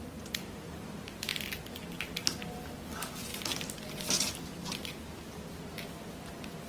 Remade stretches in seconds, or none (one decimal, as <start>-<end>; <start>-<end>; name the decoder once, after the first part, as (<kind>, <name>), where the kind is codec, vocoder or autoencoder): none